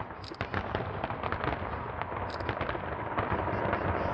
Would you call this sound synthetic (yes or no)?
no